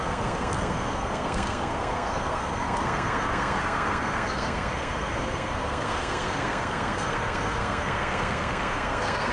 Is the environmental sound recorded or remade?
remade